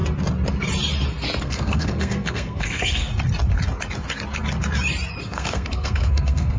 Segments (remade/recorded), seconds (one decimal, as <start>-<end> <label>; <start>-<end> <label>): 0.0-1.4 recorded; 1.4-3.1 remade; 3.1-5.2 recorded; 5.2-6.6 remade